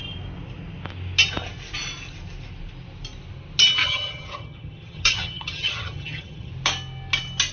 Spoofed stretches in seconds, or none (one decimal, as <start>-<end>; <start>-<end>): 3.8-6.5